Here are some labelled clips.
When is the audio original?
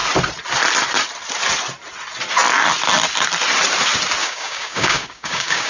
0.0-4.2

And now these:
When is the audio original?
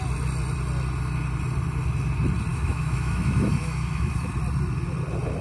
0.0-2.5; 4.3-5.4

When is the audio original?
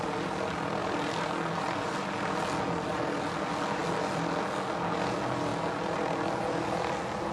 0.0-7.3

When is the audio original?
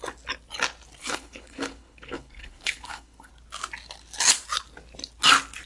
0.0-1.0; 3.3-5.7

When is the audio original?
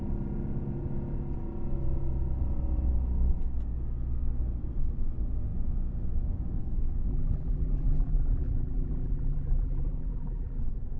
0.0-7.1; 10.6-11.0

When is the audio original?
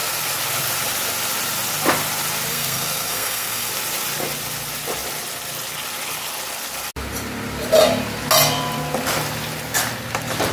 0.0-2.5; 3.7-10.5